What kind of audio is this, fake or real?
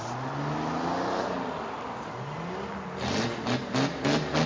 real